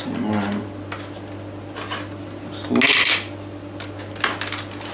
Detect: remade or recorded recorded